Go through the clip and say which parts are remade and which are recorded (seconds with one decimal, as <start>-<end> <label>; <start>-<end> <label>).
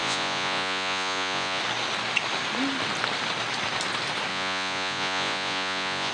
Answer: 0.0-1.6 remade; 1.6-4.3 recorded; 4.3-6.1 remade